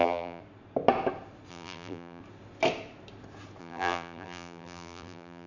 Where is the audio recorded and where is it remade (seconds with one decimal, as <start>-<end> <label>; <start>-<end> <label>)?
0.0-0.4 remade; 0.4-1.5 recorded; 1.5-2.2 remade; 2.2-3.6 recorded; 3.6-5.5 remade